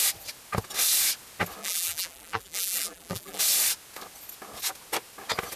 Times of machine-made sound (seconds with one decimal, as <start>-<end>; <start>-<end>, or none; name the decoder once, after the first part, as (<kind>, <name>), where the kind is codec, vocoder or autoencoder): 1.6-3.4 (vocoder, BigVGAN v2)